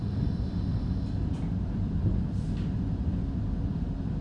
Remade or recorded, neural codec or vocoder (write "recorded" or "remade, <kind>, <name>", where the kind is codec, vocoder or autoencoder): recorded